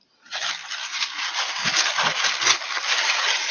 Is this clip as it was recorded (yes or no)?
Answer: yes